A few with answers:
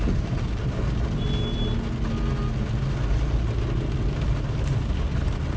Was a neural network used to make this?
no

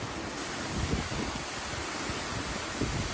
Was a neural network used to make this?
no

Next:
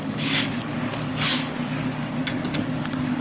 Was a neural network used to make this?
yes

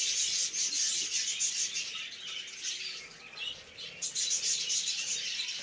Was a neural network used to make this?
no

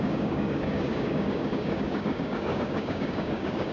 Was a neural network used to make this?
yes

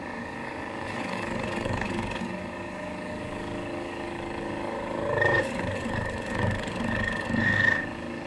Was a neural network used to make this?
yes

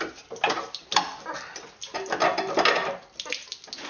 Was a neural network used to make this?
no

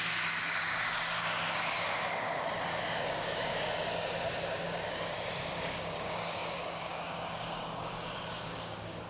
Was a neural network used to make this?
yes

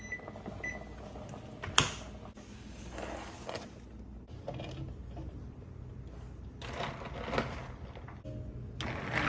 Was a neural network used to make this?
no